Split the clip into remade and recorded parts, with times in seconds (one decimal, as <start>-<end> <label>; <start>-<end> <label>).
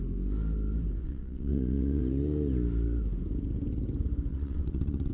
0.0-1.0 recorded; 1.0-2.0 remade; 2.0-4.3 recorded; 4.3-5.1 remade